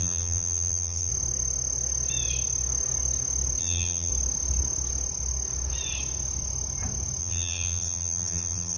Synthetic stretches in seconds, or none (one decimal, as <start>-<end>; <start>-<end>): 0.0-1.1; 3.6-4.1; 7.2-8.8